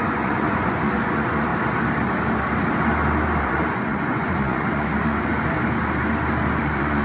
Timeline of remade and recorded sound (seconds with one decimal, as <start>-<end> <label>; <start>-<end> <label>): 0.0-1.5 remade; 1.5-3.4 recorded; 3.4-5.3 remade; 5.3-6.6 recorded; 6.6-7.0 remade